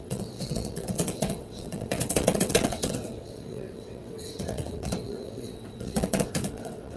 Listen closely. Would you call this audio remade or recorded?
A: remade